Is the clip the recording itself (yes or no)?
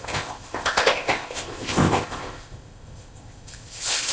no